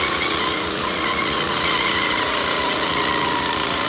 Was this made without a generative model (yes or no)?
no